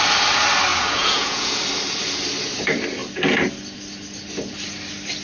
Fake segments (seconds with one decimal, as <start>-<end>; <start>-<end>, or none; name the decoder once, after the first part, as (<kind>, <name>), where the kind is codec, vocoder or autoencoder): 0.7-1.6 (vocoder, Vocos)

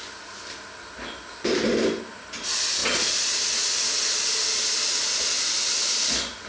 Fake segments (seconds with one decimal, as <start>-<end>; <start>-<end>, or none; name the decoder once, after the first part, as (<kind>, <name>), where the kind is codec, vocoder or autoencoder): none

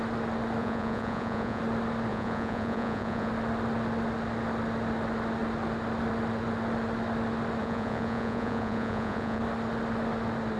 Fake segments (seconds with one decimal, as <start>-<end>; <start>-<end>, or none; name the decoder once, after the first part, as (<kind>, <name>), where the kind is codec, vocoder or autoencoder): 0.6-1.6 (vocoder, Vocos); 2.1-3.3; 7.6-9.4

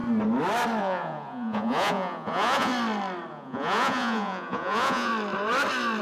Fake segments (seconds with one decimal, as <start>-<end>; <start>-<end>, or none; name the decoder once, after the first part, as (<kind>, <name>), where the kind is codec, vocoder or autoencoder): 0.8-2.7 (vocoder, Vocos); 3.3-5.1